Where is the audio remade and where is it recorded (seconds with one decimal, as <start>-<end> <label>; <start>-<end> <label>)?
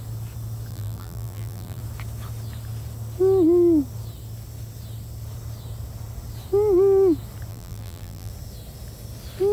0.0-0.7 recorded; 0.7-1.8 remade; 1.8-7.5 recorded; 7.5-8.3 remade; 8.3-9.5 recorded